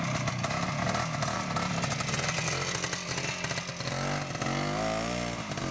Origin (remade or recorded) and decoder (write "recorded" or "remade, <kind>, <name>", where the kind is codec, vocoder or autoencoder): recorded